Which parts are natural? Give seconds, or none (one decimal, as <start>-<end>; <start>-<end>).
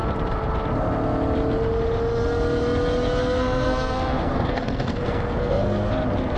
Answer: 0.0-3.2; 5.9-6.4